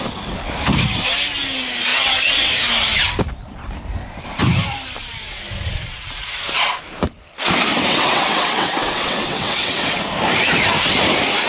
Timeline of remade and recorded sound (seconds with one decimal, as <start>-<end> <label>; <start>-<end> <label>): 0.0-1.9 recorded; 1.9-2.5 remade; 2.5-7.7 recorded; 7.7-10.0 remade; 10.0-11.5 recorded

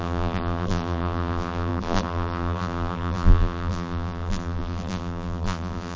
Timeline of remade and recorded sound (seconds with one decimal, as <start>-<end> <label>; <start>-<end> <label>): 0.0-6.0 remade

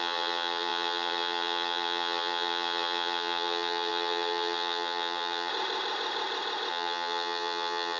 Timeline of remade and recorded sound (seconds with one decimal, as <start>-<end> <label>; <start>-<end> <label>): 0.0-5.5 remade; 5.5-6.7 recorded; 6.7-8.0 remade

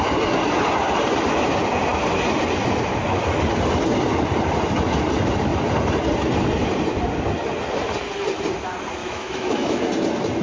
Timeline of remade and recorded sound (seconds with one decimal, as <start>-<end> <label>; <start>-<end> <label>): 0.0-9.0 recorded; 9.0-9.8 remade; 9.8-10.4 recorded

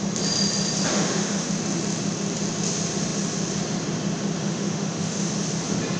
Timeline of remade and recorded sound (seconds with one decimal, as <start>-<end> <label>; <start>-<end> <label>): 0.0-0.9 recorded; 0.9-1.5 remade; 1.5-4.4 recorded; 4.4-5.3 remade; 5.3-6.0 recorded

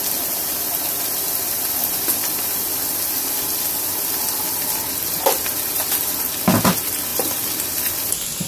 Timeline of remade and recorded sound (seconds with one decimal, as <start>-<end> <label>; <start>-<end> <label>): 0.0-7.1 recorded; 7.1-8.5 remade

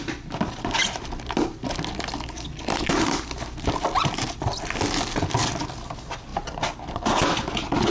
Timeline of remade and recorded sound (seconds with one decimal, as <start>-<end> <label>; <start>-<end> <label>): 0.0-7.9 recorded